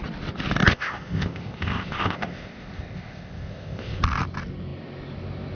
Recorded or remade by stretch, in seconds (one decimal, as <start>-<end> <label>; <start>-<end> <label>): 0.0-0.7 recorded; 0.7-4.0 remade; 4.0-5.5 recorded